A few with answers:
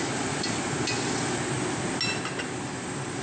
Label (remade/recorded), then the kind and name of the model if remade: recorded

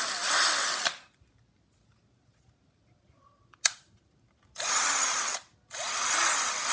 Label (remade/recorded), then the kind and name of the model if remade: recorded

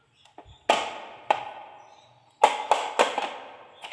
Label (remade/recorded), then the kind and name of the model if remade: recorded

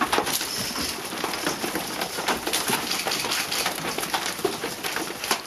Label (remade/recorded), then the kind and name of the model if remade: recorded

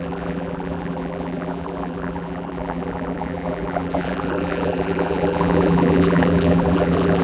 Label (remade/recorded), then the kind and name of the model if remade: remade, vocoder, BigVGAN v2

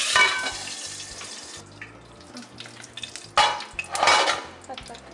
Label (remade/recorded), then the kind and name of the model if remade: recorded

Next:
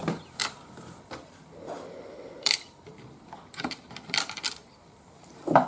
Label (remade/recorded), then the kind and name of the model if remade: remade, vocoder, BigVGAN v2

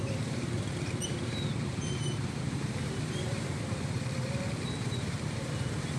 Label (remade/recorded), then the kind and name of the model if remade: remade, vocoder, BigVGAN v2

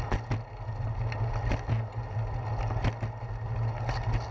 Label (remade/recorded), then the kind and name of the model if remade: recorded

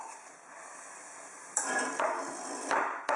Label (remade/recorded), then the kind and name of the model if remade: remade, vocoder, BigVGAN v2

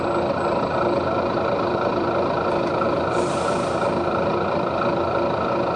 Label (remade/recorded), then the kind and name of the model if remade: remade, vocoder, BigVGAN v2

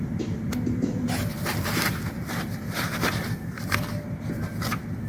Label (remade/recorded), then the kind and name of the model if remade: remade, vocoder, BigVGAN v2